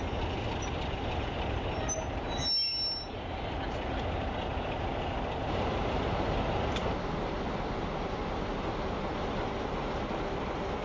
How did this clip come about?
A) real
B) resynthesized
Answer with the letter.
A